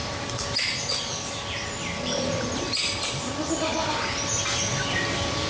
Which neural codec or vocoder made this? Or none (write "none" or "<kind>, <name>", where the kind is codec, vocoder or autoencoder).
none